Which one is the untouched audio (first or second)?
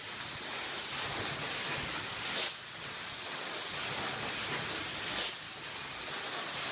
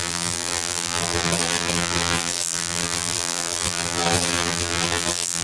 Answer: first